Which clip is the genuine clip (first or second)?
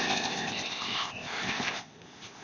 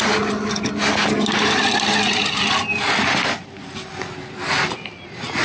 second